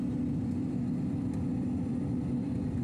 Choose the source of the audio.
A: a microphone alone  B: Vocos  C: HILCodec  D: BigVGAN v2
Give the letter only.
D